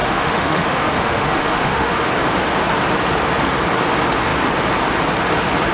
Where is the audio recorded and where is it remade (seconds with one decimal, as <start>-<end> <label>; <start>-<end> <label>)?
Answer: 0.0-2.1 remade; 2.1-5.7 recorded